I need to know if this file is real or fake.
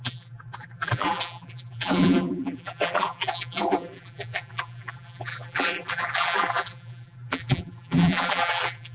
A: fake